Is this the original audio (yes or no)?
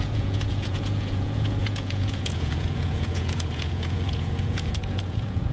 no